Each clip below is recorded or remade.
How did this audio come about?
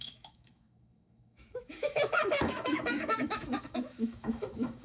remade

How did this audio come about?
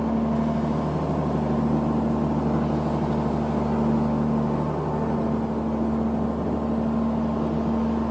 recorded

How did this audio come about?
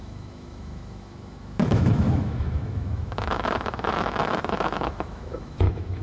remade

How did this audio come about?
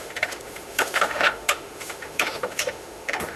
remade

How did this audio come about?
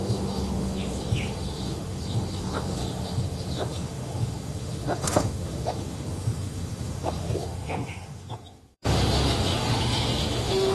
remade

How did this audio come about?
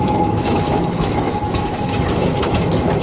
remade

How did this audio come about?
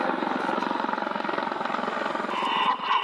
recorded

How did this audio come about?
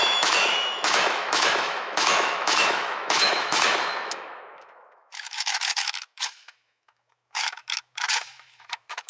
remade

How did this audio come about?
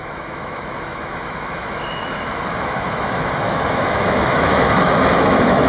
remade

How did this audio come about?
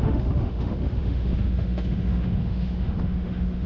remade